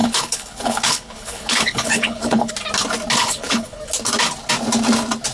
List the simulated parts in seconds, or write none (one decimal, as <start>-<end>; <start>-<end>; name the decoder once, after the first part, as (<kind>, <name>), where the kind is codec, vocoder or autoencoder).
0.0-2.5 (codec, HILCodec); 3.2-3.8